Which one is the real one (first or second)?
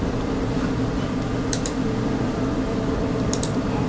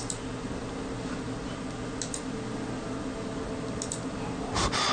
second